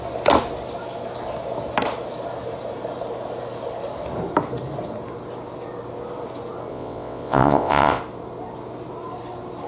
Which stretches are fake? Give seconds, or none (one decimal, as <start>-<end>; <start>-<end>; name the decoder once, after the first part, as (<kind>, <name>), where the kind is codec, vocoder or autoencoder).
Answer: 6.7-8.0 (vocoder, WaveNeXt)